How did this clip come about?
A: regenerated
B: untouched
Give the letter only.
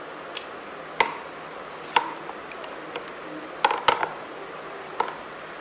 B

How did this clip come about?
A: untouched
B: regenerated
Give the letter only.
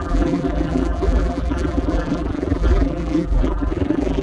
B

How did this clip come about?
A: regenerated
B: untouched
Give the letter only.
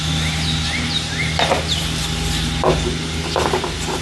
B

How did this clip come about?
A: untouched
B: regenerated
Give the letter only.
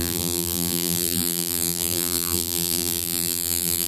B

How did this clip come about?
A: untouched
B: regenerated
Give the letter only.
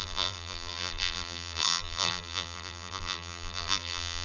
B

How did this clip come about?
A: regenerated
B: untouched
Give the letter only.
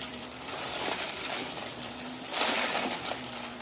A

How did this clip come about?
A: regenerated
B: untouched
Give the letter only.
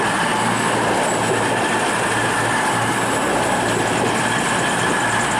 B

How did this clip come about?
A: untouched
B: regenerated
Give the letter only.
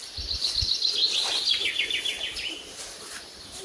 A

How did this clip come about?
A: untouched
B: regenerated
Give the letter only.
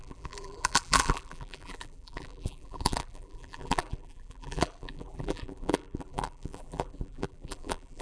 B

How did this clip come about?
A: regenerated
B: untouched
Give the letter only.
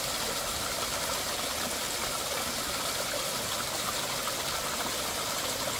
B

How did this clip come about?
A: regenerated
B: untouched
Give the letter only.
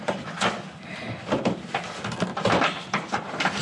A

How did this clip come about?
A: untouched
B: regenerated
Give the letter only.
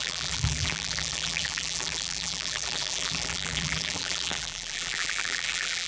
B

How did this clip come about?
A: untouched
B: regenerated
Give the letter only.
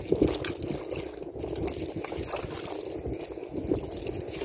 A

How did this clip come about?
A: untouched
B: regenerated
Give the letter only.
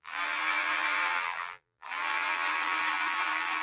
B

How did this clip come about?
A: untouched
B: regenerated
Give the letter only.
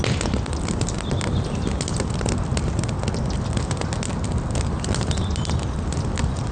A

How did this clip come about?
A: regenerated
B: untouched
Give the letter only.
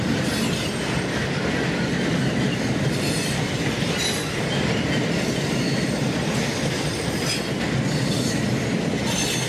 A